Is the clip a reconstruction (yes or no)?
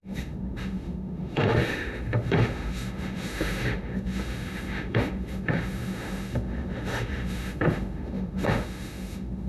yes